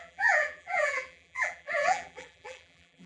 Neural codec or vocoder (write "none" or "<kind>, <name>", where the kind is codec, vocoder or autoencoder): vocoder, BigVGAN v2